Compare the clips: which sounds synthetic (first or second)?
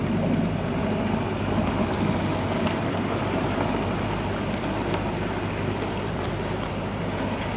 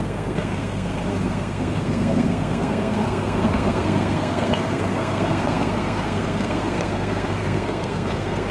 second